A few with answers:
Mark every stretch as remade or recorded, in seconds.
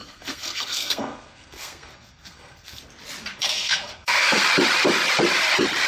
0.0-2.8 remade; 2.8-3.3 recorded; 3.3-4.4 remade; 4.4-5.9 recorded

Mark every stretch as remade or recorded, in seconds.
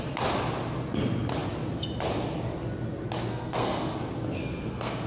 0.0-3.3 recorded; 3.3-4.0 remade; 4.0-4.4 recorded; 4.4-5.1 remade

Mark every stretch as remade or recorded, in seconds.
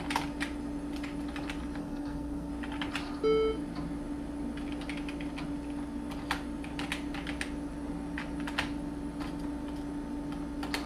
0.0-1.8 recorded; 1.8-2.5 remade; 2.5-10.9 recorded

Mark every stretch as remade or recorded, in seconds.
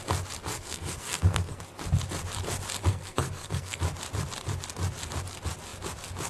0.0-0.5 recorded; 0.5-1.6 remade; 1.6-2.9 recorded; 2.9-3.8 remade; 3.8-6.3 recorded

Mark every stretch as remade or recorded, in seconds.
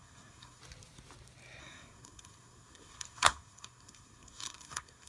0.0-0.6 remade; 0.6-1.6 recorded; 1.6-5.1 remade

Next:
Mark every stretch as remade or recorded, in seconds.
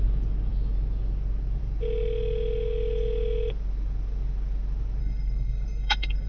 0.0-5.0 recorded; 5.0-6.3 remade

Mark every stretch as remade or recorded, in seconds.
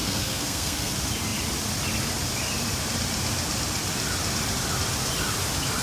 0.0-0.9 remade; 0.9-5.8 recorded